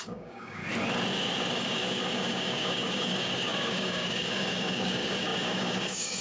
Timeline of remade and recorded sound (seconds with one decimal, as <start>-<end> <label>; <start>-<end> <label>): 0.0-0.6 remade; 0.6-1.5 recorded; 1.5-6.2 remade